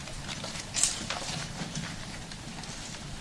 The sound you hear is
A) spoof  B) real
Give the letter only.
A